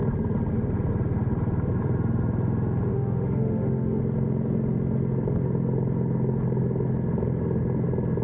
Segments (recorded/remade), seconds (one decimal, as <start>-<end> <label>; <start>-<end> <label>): 0.0-2.9 recorded; 2.9-4.0 remade; 4.0-8.2 recorded